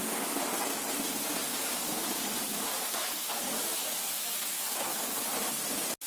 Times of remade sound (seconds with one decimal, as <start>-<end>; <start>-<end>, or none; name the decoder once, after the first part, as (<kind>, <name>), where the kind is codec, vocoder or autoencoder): 1.5-5.2 (codec, DAC)